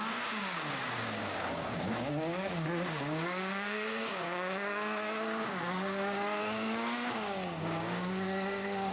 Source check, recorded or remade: remade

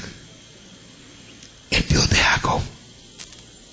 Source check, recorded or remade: recorded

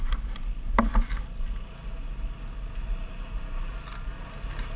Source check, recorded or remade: recorded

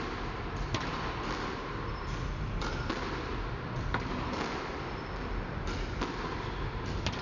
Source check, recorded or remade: recorded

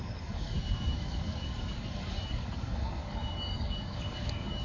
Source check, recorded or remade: remade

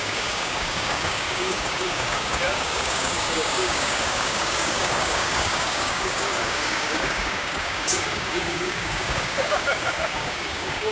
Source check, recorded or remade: remade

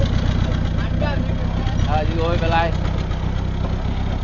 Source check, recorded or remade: recorded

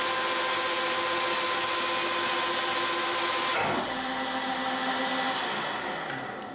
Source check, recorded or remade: recorded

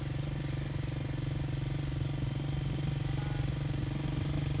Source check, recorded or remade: recorded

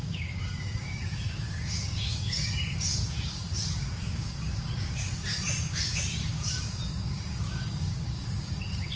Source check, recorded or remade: remade